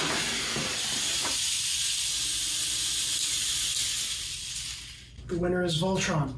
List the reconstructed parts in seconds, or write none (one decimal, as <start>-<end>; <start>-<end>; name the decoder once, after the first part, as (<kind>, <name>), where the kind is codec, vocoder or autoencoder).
none